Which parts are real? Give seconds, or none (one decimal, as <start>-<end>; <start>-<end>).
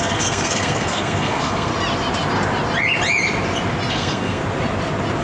1.7-3.9; 4.4-5.2